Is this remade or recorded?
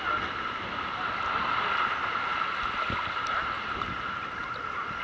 recorded